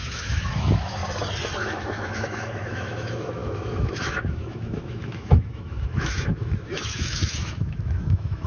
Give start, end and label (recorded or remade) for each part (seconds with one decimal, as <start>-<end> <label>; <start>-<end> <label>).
0.0-1.0 remade; 1.0-1.6 recorded; 1.6-8.5 remade